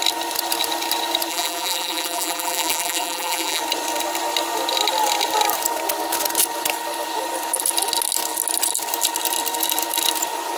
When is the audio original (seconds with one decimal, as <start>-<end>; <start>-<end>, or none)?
0.0-1.3; 3.6-10.6